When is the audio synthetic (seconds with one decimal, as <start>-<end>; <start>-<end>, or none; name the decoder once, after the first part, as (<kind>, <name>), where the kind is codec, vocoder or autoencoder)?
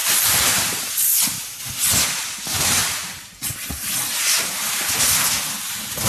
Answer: 0.0-0.9 (vocoder, BigVGAN v2)